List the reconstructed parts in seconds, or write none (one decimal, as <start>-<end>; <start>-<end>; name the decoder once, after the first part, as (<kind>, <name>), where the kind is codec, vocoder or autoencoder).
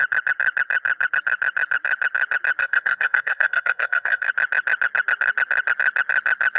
2.6-4.3 (codec, SNAC)